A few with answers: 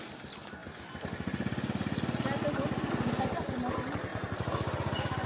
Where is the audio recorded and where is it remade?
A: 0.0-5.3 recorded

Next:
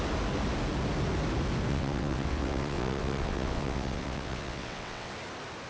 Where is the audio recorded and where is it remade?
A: 0.0-1.7 recorded; 1.7-5.1 remade; 5.1-5.7 recorded

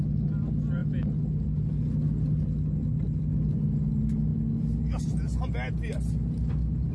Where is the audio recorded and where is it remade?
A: 0.0-6.9 recorded

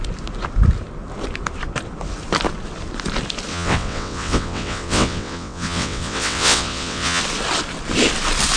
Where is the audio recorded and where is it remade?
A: 0.0-3.5 recorded; 3.5-7.2 remade; 7.2-8.6 recorded

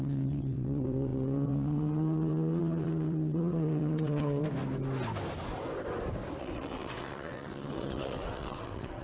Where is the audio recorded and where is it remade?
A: 0.0-4.4 remade; 4.4-6.4 recorded; 6.4-9.0 remade

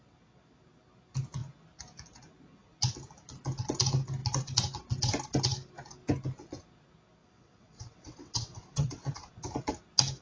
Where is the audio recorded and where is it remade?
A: 0.0-7.2 recorded; 7.2-9.3 remade; 9.3-10.2 recorded